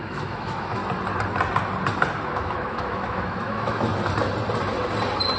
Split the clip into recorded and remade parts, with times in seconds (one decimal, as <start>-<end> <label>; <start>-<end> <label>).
0.0-0.8 remade; 0.8-2.2 recorded; 2.2-3.9 remade; 3.9-5.4 recorded